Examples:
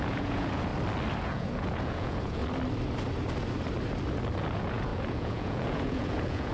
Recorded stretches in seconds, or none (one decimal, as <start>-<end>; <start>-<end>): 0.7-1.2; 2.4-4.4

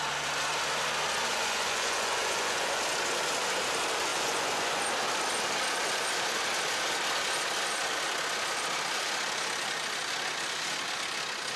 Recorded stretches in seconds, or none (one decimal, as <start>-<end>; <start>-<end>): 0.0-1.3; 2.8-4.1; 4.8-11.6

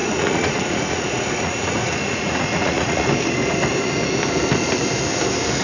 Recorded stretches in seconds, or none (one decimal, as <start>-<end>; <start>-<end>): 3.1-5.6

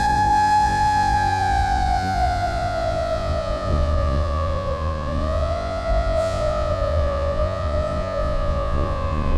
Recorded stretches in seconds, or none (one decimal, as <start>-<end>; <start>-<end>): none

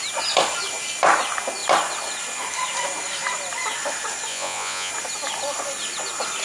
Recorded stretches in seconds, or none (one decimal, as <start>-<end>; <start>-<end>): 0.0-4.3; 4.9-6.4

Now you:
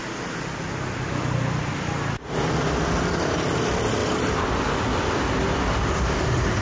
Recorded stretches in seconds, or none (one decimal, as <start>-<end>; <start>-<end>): 0.0-6.6

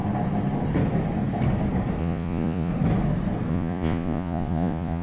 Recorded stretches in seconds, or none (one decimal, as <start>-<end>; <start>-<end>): 0.0-2.0; 2.7-3.5

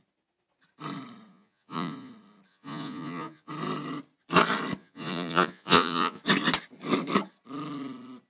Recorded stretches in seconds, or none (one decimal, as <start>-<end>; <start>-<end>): 0.0-1.3; 2.1-2.5; 3.5-4.8; 6.2-8.3